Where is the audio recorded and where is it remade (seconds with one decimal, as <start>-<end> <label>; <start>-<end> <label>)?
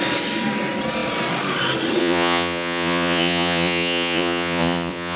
0.0-2.0 recorded; 2.0-5.2 remade